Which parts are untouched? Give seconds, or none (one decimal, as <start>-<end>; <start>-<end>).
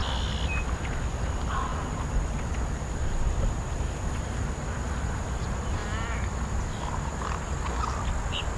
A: 0.0-1.2; 5.8-6.5